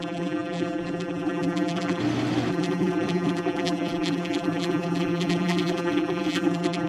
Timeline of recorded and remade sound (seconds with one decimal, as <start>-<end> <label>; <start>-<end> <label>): 0.0-2.0 remade; 2.0-2.5 recorded; 2.5-6.9 remade